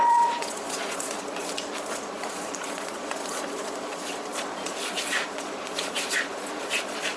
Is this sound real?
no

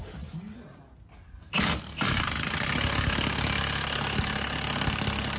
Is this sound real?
yes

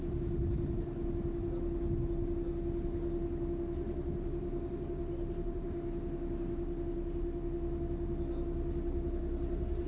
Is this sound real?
yes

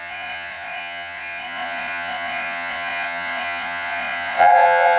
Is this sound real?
no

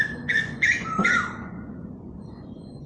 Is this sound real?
no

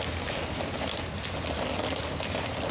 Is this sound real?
yes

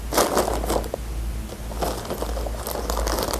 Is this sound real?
yes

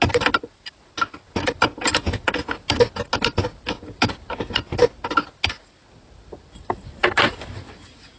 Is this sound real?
yes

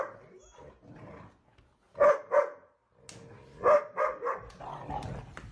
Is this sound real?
yes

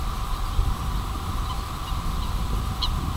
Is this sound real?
yes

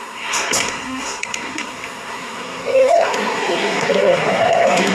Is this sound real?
no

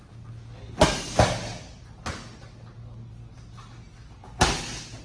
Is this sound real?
yes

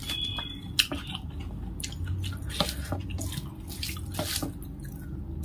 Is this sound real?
yes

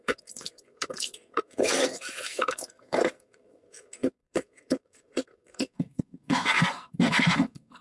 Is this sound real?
no